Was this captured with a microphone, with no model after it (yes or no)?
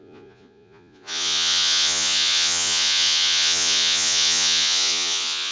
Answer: no